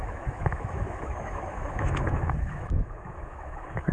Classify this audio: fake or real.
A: fake